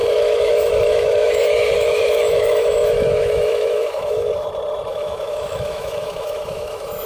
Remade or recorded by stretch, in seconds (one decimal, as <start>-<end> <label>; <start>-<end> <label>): 0.0-4.3 remade; 4.3-4.9 recorded; 4.9-7.1 remade